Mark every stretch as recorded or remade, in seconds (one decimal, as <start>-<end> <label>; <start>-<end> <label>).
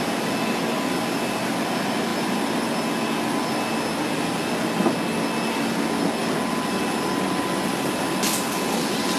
0.0-9.2 recorded